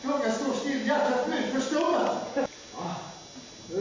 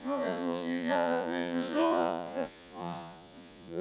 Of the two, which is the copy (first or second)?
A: second